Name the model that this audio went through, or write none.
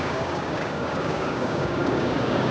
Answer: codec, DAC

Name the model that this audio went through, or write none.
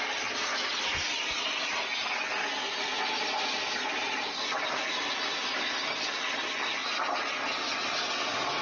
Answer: none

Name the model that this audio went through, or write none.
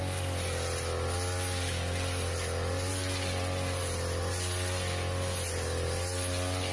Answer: none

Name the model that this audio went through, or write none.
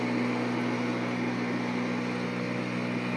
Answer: none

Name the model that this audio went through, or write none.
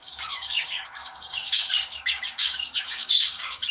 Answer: codec, DAC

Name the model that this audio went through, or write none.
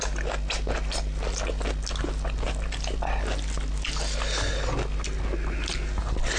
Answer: none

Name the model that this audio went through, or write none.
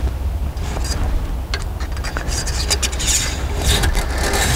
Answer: none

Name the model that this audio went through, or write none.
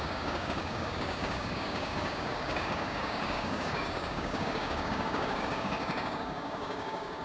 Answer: codec, DAC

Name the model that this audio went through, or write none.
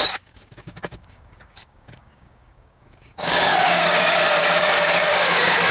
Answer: codec, DAC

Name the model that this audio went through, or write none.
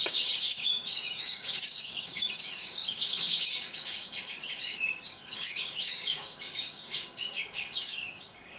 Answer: codec, DAC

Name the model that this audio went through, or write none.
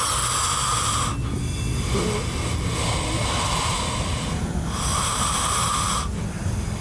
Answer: none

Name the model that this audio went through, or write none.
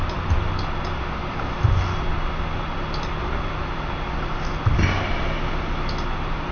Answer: none